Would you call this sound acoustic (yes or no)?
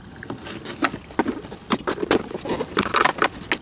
yes